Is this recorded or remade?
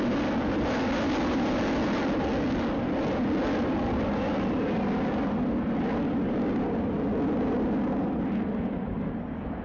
recorded